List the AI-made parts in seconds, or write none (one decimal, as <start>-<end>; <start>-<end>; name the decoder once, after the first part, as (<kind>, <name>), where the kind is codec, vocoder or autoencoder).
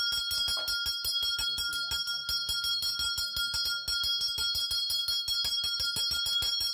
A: none